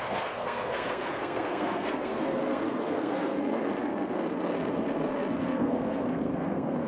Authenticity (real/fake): fake